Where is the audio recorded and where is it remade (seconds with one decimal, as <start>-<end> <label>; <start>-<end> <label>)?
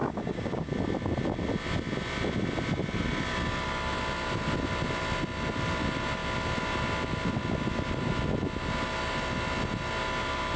0.0-0.7 remade; 0.7-10.6 recorded